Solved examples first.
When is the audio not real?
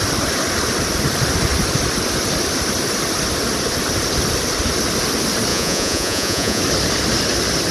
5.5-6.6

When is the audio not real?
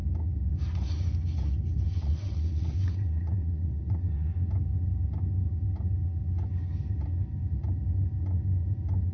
1.9-4.3